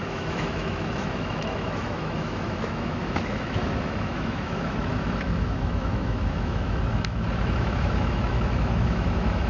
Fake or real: fake